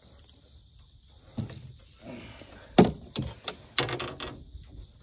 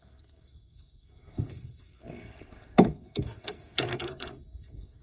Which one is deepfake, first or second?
second